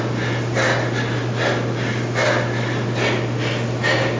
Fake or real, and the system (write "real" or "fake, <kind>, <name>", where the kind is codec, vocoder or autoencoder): real